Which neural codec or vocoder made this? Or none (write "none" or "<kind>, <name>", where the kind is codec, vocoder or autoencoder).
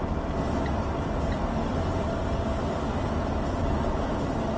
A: none